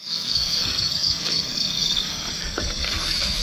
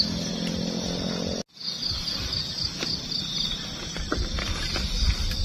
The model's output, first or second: first